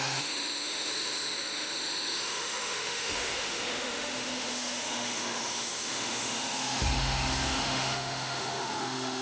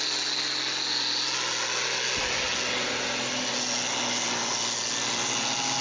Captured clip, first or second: second